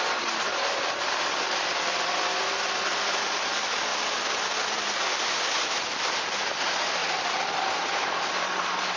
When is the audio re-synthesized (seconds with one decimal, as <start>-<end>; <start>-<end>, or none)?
0.0-3.9; 6.4-9.0